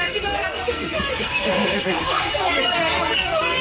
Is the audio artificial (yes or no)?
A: yes